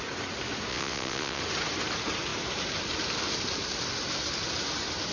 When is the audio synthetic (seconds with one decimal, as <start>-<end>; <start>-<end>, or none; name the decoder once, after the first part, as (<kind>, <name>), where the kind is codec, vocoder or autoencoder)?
0.7-1.4 (vocoder, WaveNeXt)